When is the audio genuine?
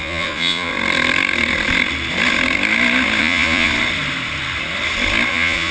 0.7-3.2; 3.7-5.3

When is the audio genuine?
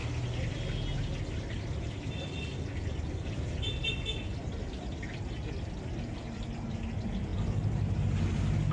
0.0-8.7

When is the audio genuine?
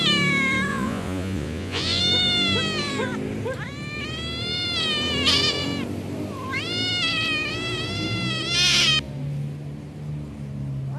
0.0-0.7; 2.0-11.0